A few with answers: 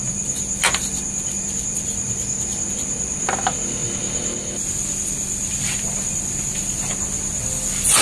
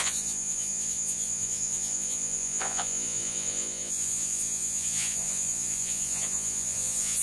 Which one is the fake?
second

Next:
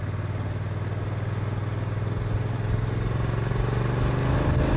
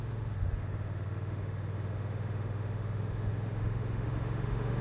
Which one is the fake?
second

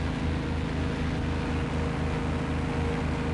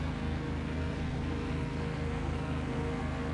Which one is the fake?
second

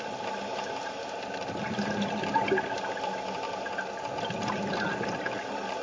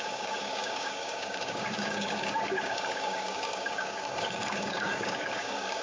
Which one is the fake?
second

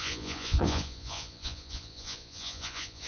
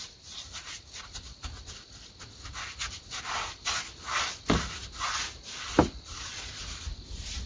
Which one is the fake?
first